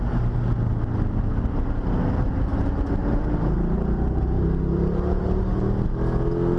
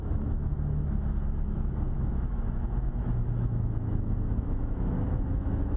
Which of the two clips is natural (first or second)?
first